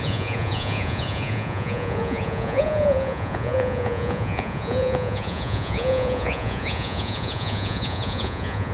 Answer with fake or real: fake